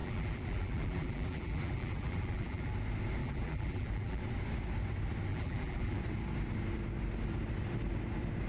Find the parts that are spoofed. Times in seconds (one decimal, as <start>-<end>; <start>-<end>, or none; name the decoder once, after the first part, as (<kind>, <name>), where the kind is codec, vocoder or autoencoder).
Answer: 0.0-2.7 (vocoder, BigVGAN v2); 3.2-4.2; 5.3-6.0